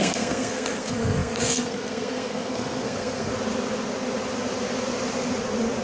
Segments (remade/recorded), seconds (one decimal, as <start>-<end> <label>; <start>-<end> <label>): 0.0-3.3 remade; 3.3-5.8 recorded